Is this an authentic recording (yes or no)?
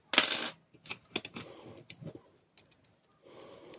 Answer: yes